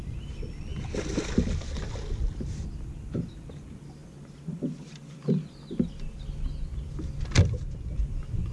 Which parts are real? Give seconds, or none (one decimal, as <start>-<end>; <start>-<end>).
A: 0.0-8.5

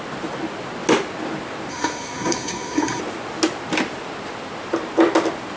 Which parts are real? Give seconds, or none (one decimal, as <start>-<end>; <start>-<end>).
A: 0.0-1.7; 3.0-5.6

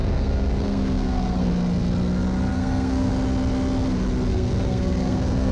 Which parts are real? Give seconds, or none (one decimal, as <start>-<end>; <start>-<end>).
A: 1.5-2.5; 3.1-4.3

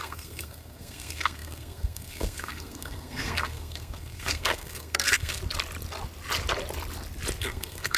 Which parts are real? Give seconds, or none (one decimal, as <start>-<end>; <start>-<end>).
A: 5.4-7.4

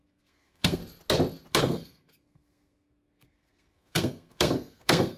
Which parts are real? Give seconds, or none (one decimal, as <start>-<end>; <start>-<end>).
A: 0.8-1.6